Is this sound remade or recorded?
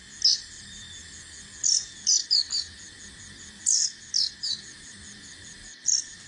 recorded